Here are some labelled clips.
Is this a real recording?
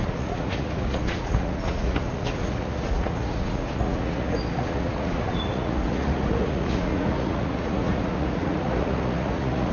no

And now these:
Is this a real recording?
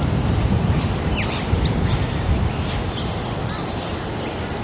yes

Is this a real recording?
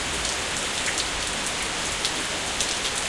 yes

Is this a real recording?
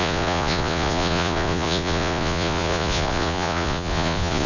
no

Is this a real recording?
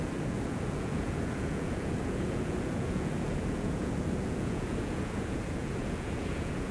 no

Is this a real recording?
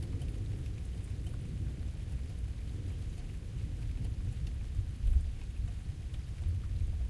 yes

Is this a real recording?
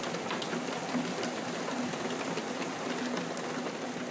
yes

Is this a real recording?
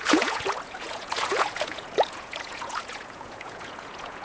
no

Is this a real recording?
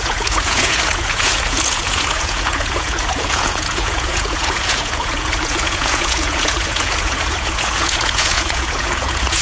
no